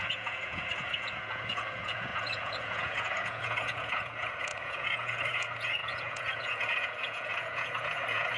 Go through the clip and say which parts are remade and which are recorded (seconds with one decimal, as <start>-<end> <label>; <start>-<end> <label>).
0.0-8.4 remade